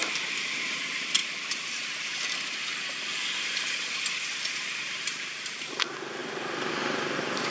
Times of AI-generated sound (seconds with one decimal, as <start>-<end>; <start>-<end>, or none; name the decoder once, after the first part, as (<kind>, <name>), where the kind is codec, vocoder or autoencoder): 1.2-2.2 (vocoder, BigVGAN v2); 2.7-5.2